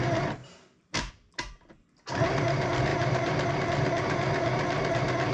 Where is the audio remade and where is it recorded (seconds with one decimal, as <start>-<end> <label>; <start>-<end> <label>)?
0.0-0.4 recorded; 0.4-1.1 remade; 1.1-2.9 recorded; 2.9-3.5 remade; 3.5-5.3 recorded